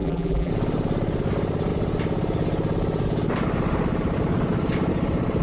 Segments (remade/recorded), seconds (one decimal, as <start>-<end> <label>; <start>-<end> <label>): 0.0-0.5 remade; 0.5-5.4 recorded